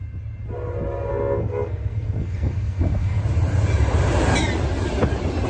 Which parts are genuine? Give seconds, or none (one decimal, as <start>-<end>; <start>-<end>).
0.0-1.1; 3.2-5.5